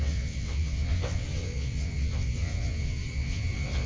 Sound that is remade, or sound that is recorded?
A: remade